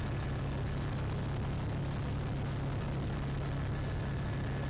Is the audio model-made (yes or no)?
no